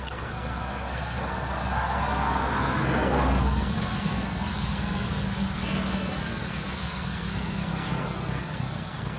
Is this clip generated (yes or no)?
yes